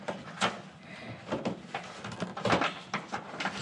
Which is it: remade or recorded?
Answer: recorded